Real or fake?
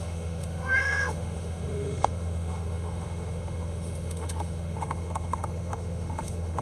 fake